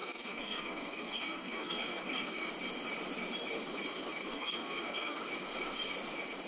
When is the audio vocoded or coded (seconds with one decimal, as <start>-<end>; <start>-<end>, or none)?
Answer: 0.0-2.5; 4.3-5.2